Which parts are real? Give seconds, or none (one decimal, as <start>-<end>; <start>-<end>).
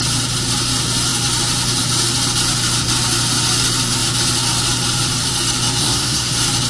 0.0-5.8; 6.3-6.7